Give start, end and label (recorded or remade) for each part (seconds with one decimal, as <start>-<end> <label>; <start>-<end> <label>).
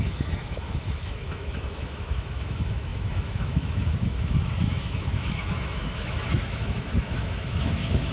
0.0-8.1 remade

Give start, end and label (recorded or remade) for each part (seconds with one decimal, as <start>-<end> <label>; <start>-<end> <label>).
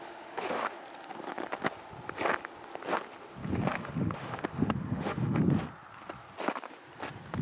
0.0-0.8 remade; 0.8-3.7 recorded; 3.7-5.4 remade; 5.4-7.4 recorded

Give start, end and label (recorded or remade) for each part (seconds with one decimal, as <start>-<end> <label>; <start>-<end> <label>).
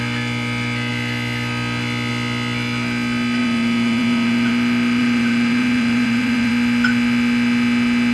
0.0-3.4 recorded; 3.4-4.5 remade; 4.5-5.0 recorded; 5.0-6.5 remade; 6.5-8.1 recorded